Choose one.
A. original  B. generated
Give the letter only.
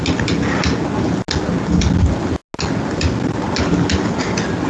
A